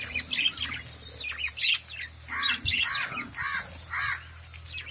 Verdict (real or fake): real